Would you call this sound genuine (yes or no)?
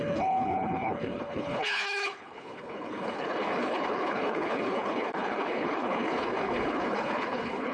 no